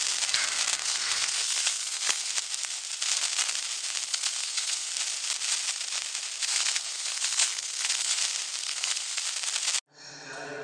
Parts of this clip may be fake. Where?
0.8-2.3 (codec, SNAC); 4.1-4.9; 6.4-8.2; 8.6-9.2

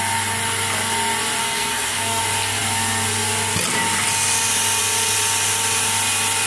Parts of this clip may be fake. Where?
1.4-2.2 (codec, SNAC)

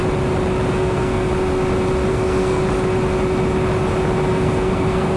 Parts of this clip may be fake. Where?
0.7-1.3 (codec, SNAC); 2.1-2.6; 4.3-5.2

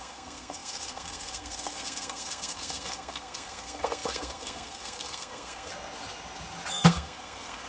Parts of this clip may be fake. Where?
0.0-5.7 (codec, SNAC); 6.7-7.7

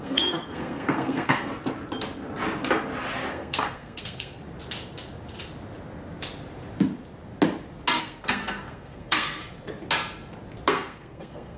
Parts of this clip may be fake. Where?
0.0-1.5 (codec, SNAC); 3.3-4.4; 8.0-9.4; 10.7-11.6